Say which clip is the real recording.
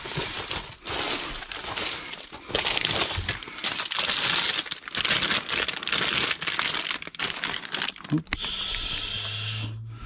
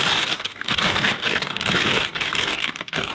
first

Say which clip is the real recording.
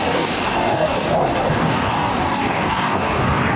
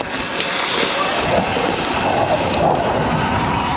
second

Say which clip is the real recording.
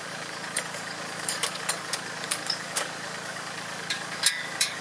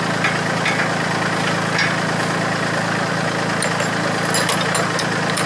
second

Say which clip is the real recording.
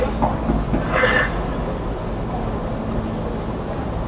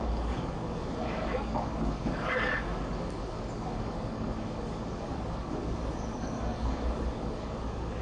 first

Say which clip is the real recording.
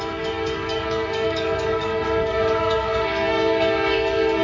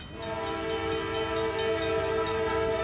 second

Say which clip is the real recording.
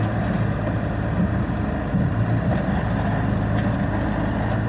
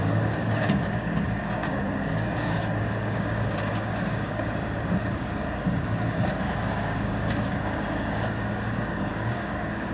first